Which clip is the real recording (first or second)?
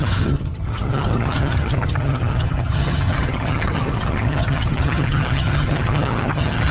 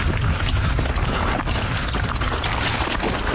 second